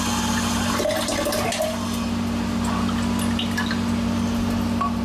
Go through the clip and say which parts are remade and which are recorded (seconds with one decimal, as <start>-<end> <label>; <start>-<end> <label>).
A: 0.0-5.0 recorded